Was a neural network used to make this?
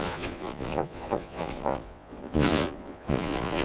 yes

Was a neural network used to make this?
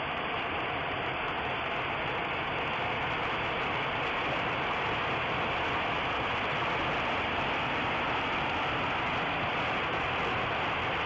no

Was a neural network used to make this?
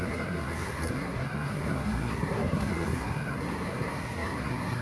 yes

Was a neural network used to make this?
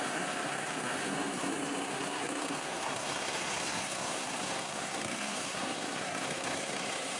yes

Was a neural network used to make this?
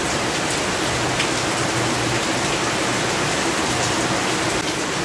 no